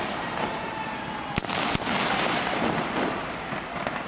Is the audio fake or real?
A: real